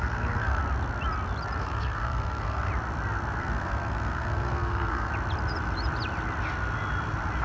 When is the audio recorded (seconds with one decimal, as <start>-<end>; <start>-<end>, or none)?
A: 0.6-1.6; 2.7-3.4; 5.1-7.4

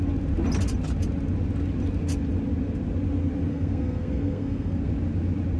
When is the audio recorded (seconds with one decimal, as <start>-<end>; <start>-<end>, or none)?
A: 0.0-3.5; 4.9-5.6